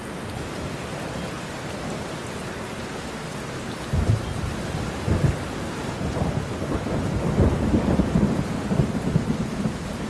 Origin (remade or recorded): recorded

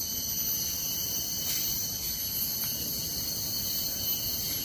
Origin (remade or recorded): recorded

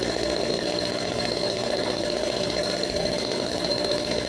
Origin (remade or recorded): remade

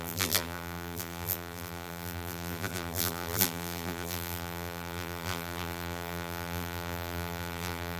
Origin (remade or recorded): remade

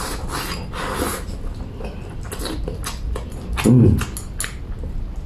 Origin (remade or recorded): recorded